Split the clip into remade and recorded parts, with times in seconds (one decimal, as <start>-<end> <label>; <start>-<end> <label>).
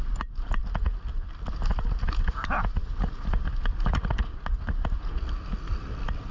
0.0-6.3 recorded